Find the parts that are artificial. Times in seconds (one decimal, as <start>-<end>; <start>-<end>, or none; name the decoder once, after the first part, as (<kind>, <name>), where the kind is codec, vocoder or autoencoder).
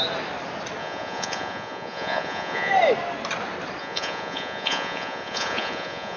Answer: 0.8-2.7 (vocoder, Vocos); 3.8-6.2